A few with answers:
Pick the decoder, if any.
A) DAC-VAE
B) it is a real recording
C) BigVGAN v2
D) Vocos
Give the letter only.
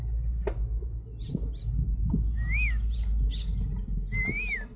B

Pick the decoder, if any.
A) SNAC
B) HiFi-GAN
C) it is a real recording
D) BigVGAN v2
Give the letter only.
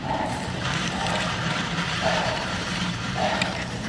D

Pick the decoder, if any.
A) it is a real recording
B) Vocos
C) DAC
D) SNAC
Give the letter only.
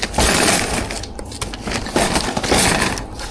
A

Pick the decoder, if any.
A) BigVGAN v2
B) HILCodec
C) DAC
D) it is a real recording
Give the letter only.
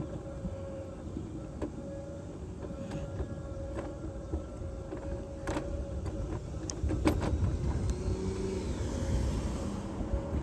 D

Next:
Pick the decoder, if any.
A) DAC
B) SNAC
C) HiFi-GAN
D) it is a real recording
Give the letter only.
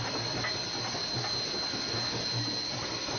D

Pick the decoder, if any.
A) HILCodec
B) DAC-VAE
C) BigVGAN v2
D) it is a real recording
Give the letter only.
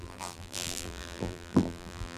C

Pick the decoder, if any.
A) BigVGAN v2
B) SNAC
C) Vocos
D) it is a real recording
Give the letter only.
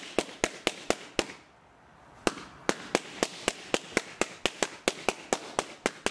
D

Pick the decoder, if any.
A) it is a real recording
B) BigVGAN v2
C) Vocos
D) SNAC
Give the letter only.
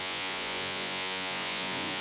C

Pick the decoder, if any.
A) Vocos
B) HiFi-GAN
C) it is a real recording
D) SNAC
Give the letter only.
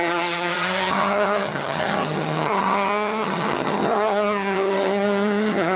B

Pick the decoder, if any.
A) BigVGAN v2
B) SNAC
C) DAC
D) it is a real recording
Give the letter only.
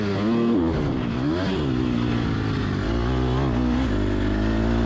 D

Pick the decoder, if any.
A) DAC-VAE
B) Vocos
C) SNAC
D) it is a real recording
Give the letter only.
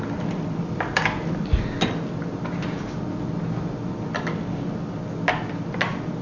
D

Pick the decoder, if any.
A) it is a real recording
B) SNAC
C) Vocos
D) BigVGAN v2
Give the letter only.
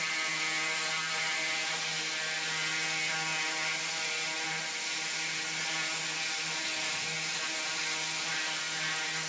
A